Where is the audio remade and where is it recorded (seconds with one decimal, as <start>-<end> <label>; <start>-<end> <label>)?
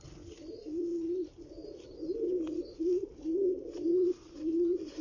0.0-5.0 recorded